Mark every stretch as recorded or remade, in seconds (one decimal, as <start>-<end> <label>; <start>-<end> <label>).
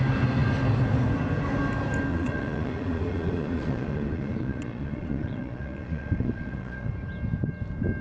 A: 0.0-2.1 recorded; 2.1-6.9 remade; 6.9-8.0 recorded